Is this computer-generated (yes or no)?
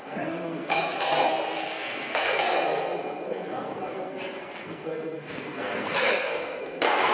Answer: yes